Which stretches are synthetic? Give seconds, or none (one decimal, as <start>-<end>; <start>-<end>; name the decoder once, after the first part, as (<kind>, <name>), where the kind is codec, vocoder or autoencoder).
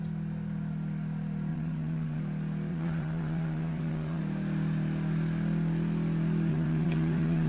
1.5-2.2 (vocoder, WaveNeXt); 2.7-4.2; 6.5-7.5